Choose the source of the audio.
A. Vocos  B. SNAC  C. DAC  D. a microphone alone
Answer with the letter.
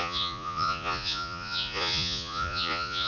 A